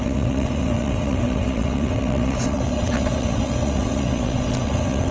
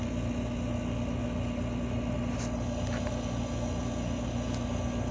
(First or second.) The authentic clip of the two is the second